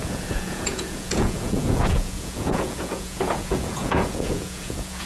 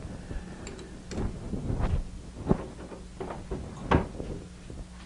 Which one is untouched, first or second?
second